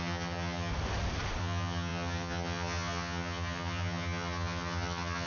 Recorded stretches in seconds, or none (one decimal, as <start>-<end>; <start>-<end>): 0.7-1.4

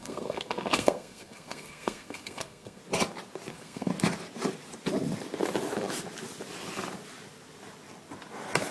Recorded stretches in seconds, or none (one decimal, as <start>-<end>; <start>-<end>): 2.8-3.5; 3.9-8.7

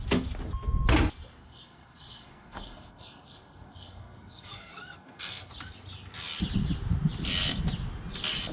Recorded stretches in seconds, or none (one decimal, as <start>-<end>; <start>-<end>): 0.0-1.4; 5.5-8.5

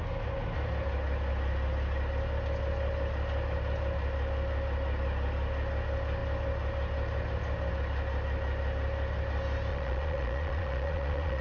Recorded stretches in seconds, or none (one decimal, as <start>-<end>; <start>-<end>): 0.0-9.7

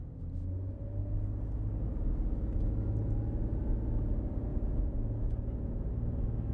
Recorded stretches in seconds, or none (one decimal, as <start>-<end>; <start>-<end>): 0.0-4.5; 5.9-6.5

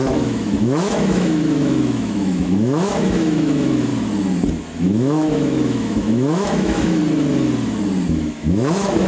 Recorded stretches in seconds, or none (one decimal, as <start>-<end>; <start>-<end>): 3.9-4.8; 7.0-8.1